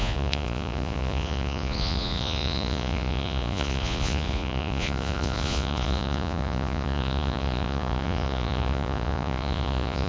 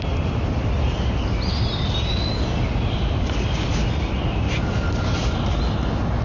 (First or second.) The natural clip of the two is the second